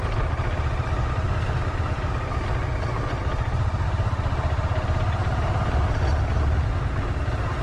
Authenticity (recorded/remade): recorded